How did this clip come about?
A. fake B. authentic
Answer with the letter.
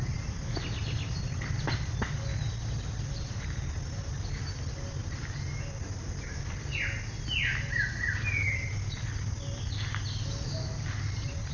B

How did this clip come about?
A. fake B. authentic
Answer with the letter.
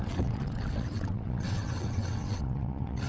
A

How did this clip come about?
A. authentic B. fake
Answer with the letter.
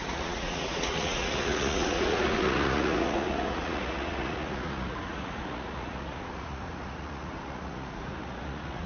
B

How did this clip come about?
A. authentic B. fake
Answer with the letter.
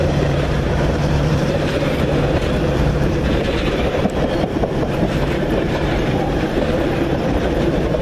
B